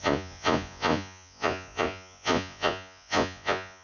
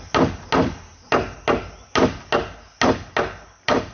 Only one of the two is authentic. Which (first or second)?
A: second